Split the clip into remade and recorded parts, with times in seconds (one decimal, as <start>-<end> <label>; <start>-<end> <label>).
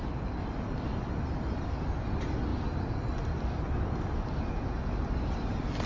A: 0.0-5.9 recorded